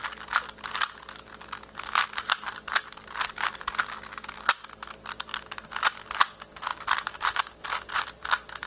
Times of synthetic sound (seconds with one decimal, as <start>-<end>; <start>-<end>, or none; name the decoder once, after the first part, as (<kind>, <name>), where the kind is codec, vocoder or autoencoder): 6.7-7.4 (vocoder, BigVGAN v2)